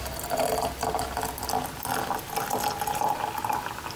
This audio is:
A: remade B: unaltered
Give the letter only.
B